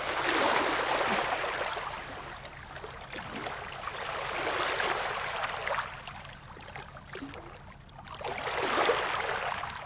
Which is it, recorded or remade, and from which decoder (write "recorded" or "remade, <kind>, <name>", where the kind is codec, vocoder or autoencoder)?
recorded